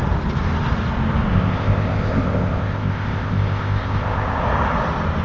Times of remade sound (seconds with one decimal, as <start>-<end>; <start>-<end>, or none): 1.3-4.4